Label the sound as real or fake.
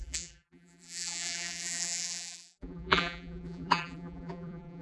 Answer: fake